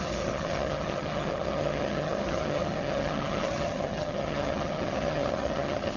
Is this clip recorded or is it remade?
remade